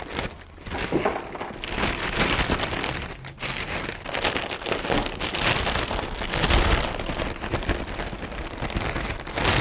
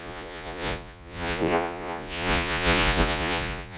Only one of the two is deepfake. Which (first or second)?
second